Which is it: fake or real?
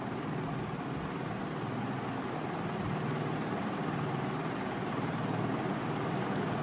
real